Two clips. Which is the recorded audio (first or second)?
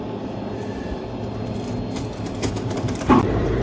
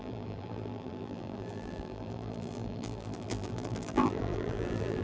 first